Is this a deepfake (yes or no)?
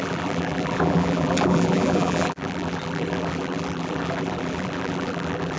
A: yes